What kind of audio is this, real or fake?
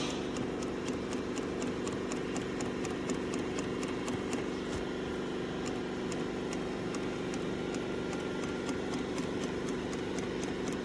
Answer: real